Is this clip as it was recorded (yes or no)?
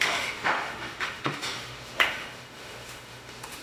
no